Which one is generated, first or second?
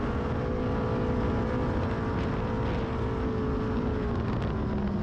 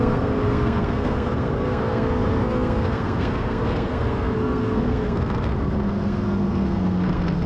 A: second